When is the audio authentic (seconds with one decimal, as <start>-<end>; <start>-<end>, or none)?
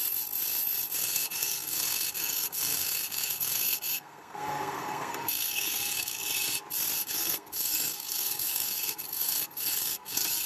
0.0-1.0; 6.2-7.0